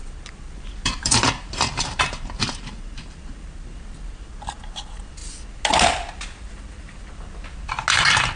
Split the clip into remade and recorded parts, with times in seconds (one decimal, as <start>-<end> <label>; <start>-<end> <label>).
0.0-3.5 remade; 3.5-8.4 recorded